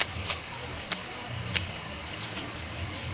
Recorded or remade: remade